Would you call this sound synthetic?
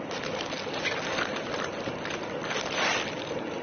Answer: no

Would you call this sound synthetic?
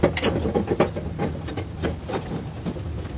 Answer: no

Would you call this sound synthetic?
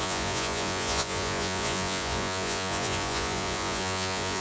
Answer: yes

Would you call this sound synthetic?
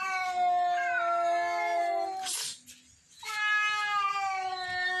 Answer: no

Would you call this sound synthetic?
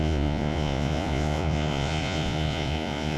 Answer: yes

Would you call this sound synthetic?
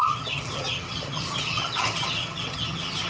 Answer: yes